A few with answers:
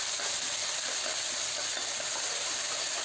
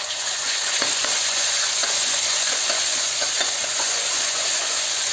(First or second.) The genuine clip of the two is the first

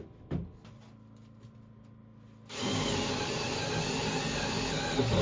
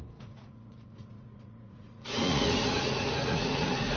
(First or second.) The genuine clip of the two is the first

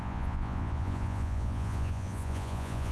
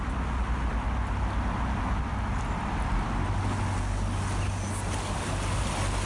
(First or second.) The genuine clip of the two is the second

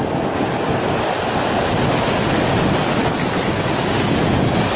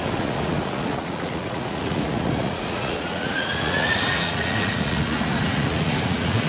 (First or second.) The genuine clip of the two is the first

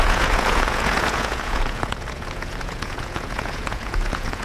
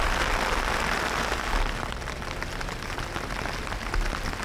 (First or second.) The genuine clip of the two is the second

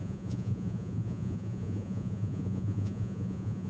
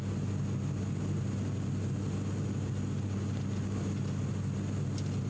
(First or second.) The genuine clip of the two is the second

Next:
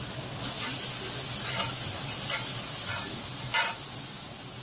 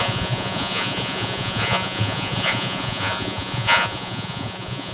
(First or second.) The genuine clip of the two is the first